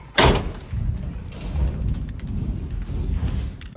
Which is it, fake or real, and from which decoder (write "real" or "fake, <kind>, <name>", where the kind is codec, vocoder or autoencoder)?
real